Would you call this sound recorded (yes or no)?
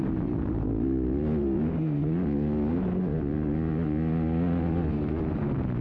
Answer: yes